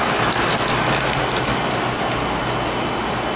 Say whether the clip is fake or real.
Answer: real